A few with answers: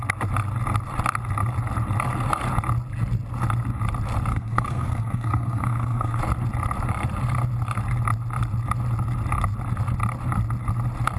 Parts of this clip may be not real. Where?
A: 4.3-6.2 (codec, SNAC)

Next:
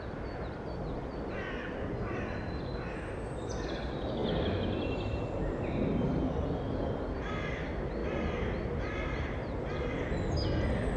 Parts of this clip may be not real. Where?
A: none